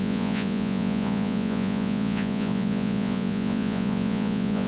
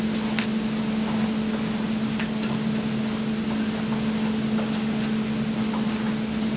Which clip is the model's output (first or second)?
first